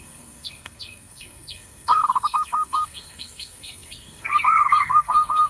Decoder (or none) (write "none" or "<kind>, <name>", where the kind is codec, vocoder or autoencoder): codec, SNAC